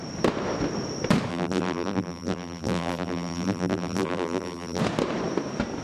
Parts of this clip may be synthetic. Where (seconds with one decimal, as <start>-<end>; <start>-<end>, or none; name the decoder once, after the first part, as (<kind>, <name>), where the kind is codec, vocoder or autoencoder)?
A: 1.3-4.8 (vocoder, BigVGAN v2)